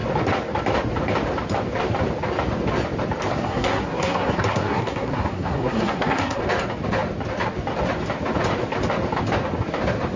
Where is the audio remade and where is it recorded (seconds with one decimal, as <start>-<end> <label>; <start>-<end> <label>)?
0.0-3.3 recorded; 3.3-6.4 remade; 6.4-10.2 recorded